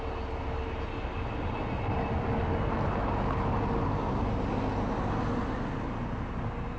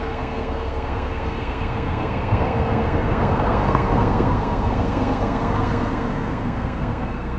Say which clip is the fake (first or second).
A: second